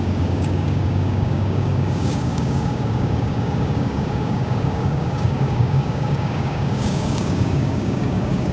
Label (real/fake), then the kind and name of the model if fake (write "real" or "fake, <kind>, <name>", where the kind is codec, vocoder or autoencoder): fake, codec, DAC